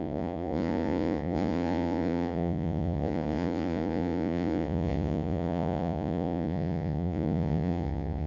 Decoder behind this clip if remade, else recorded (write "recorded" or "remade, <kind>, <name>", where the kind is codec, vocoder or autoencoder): remade, vocoder, Vocos